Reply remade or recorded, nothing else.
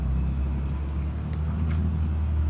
recorded